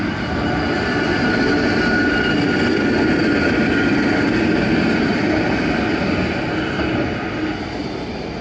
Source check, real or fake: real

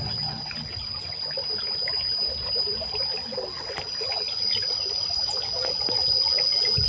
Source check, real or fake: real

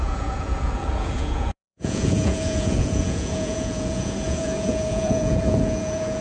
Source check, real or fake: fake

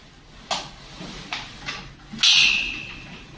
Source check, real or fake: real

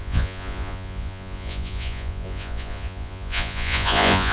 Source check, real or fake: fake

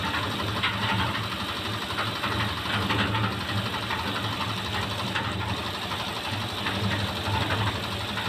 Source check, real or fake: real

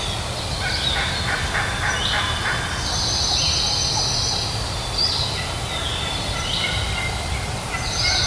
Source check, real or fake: real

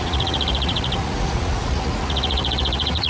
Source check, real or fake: fake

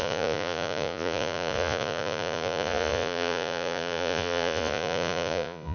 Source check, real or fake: fake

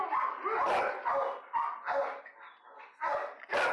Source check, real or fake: real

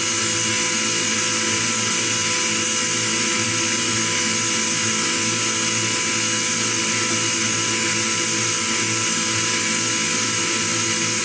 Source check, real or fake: real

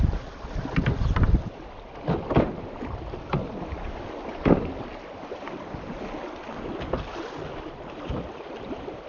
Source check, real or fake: real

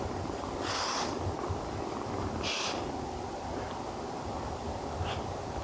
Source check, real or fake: real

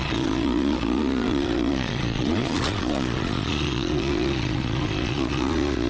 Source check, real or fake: fake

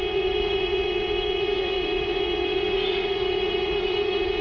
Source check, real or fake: fake